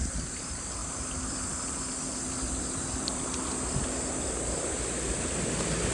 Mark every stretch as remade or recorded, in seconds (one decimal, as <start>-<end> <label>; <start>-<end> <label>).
0.0-5.9 recorded